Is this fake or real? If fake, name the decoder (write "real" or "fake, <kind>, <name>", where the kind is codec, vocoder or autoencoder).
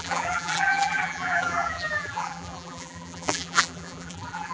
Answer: fake, vocoder, BigVGAN v2